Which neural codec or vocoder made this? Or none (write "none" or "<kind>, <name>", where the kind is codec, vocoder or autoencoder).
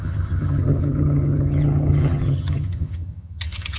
vocoder, HiFi-GAN